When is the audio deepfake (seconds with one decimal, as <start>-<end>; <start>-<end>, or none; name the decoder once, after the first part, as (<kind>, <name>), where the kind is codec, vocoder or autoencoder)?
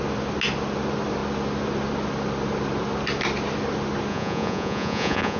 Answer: 4.1-5.4 (vocoder, Vocos)